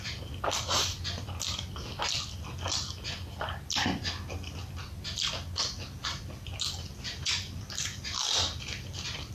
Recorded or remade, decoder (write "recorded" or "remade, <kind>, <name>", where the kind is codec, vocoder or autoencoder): recorded